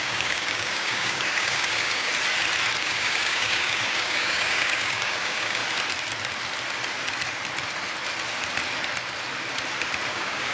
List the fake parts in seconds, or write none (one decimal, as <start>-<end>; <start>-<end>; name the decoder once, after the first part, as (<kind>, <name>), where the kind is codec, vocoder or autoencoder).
0.0-2.1 (codec, DAC); 2.8-5.6; 10.1-10.5